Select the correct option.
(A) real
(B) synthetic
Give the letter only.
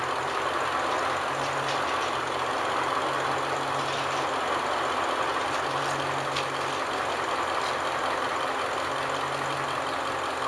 A